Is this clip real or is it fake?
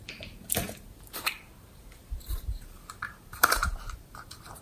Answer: fake